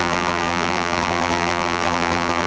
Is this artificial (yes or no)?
yes